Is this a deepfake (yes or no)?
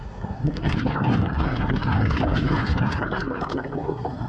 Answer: yes